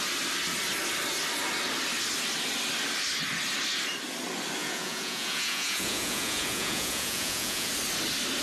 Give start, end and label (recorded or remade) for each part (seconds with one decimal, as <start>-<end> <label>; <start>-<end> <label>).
0.0-4.6 recorded; 4.6-7.7 remade; 7.7-8.4 recorded